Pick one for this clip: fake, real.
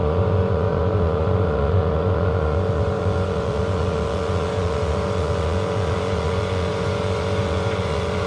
fake